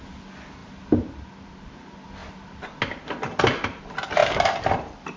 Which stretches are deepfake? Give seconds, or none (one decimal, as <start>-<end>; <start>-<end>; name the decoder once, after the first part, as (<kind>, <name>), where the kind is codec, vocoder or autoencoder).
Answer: 4.2-5.2 (vocoder, BigVGAN v2)

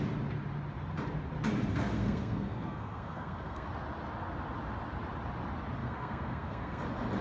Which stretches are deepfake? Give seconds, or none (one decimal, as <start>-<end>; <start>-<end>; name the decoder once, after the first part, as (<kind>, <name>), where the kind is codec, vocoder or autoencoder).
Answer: 1.7-3.7 (codec, SNAC); 5.8-6.8

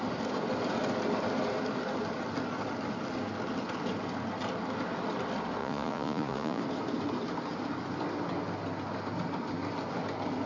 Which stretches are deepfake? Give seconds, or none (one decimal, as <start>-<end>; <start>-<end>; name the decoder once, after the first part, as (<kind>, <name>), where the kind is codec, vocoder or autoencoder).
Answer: 5.6-6.6 (vocoder, Vocos)

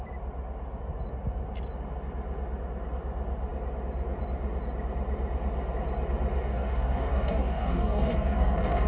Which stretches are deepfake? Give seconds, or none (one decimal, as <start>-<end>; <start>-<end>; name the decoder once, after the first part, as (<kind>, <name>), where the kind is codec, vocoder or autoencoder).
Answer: 6.4-8.9 (codec, DAC)

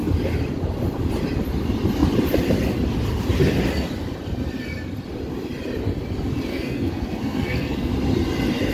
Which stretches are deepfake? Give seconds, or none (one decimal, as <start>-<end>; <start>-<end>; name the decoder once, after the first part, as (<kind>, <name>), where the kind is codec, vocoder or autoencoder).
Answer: 6.5-7.9 (codec, SNAC)